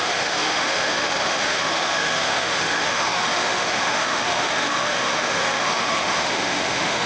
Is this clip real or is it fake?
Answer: fake